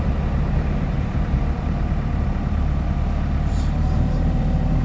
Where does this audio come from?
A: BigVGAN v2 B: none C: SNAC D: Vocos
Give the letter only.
A